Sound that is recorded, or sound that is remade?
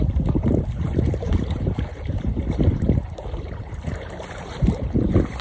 remade